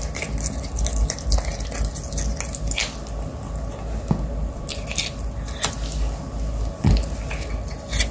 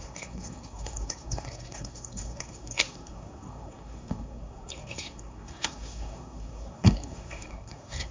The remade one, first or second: second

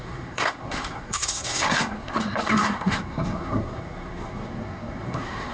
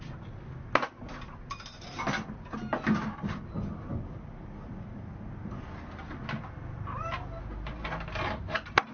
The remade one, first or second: first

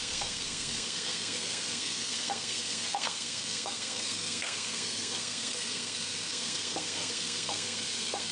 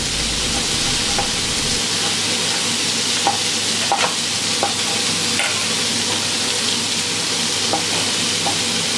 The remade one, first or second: first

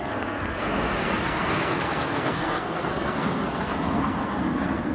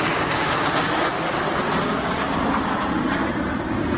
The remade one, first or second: first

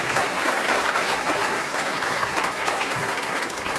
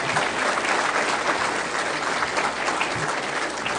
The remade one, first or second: first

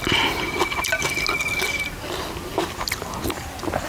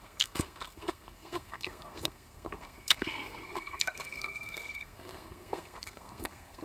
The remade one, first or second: second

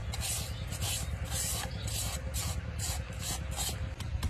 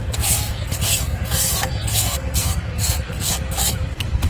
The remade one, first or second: second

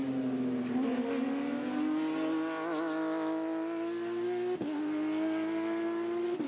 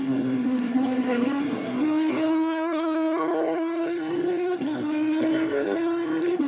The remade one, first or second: second